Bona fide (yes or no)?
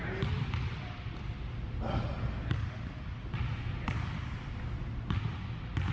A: yes